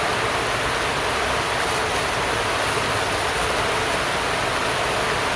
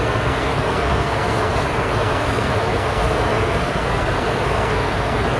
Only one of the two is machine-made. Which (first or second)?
second